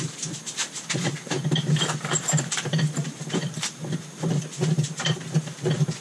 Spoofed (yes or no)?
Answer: no